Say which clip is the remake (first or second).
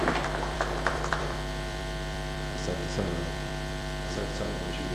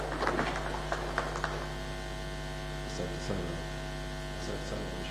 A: first